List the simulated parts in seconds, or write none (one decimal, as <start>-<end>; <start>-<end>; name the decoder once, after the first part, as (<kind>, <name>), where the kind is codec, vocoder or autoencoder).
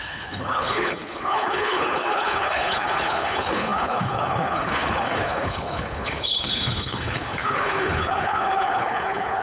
0.0-9.4 (codec, HILCodec)